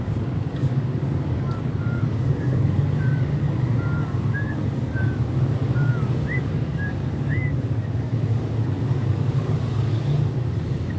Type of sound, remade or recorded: remade